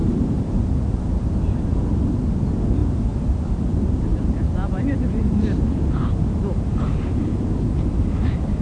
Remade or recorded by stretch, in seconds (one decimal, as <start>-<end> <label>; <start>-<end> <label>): 0.0-0.6 remade; 0.6-2.8 recorded; 2.8-3.3 remade; 3.3-4.1 recorded; 4.1-7.9 remade; 7.9-8.6 recorded